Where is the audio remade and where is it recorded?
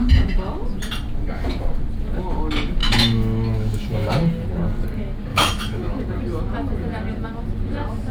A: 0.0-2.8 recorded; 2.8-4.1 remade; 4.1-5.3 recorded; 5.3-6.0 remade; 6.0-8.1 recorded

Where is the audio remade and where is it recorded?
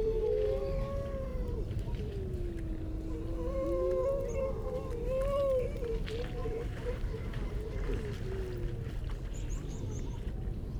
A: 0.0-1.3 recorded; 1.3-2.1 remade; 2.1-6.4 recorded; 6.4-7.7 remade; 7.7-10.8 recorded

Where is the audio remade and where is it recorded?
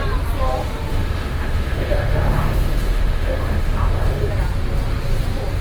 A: 0.0-0.9 recorded; 0.9-4.3 remade; 4.3-5.6 recorded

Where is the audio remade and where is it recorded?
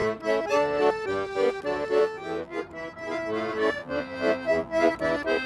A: 0.0-2.0 recorded; 2.0-2.6 remade; 2.6-3.8 recorded; 3.8-4.9 remade; 4.9-5.5 recorded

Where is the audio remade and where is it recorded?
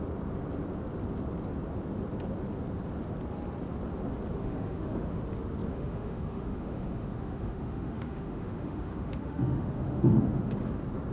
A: 0.0-4.4 recorded; 4.4-5.2 remade; 5.2-5.7 recorded; 5.7-10.5 remade; 10.5-11.1 recorded